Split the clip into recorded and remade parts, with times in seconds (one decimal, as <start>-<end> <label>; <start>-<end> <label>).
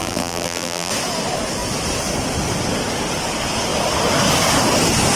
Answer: 0.0-0.9 remade; 0.9-5.2 recorded